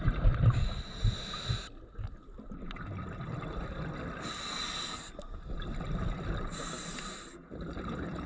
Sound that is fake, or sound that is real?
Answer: real